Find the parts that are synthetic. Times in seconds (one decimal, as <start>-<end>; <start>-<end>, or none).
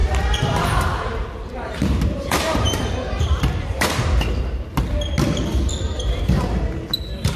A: 0.0-4.4; 5.7-6.2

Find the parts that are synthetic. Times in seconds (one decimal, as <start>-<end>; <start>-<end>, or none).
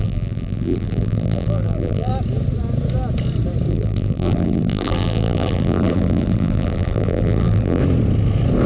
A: 0.0-2.1; 3.7-7.8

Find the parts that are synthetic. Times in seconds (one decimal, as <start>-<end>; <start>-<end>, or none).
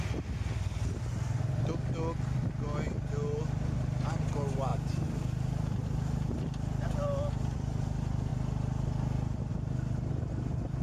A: none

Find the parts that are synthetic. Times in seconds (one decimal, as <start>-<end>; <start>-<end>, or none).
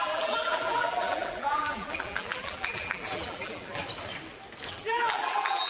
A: 0.0-3.8; 4.7-5.7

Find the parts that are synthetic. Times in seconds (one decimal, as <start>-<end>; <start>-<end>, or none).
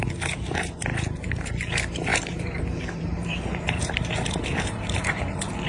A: 0.9-1.5; 2.1-5.2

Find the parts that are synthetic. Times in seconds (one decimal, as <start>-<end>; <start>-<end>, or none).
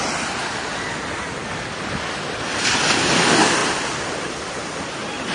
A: 3.6-4.3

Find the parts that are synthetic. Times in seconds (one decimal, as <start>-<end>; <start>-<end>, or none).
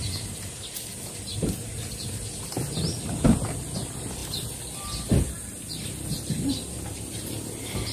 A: 0.0-7.9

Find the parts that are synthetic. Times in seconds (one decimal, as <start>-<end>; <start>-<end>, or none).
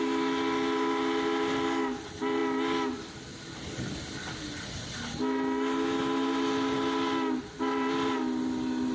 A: none